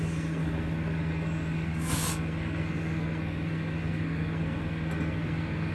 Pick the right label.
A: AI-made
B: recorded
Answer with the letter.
A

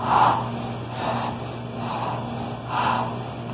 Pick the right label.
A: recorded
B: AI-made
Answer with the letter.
A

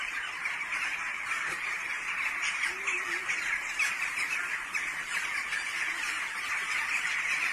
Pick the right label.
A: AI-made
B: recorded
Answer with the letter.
B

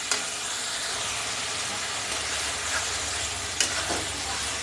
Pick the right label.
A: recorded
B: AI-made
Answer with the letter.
A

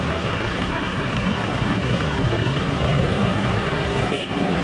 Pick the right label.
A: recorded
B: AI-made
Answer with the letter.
B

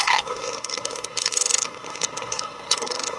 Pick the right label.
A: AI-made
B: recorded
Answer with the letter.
A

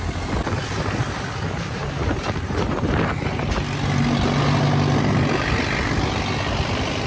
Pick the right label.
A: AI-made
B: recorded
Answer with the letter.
B